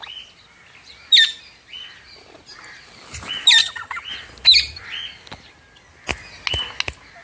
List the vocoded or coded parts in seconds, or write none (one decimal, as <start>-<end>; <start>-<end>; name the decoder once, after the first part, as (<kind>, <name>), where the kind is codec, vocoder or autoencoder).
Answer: 3.6-4.1 (vocoder, HiFi-GAN)